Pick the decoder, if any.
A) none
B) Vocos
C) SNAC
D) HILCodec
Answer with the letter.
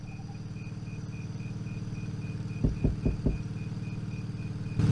A